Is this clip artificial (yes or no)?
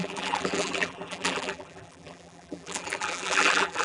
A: yes